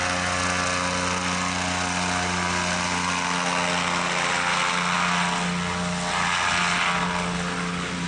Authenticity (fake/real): real